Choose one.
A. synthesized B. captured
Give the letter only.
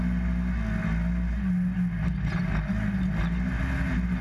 B